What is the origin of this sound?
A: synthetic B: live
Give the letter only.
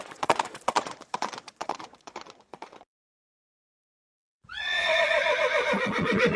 A